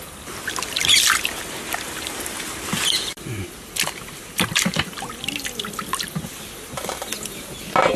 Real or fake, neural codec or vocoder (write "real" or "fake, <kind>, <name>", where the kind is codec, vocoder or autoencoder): real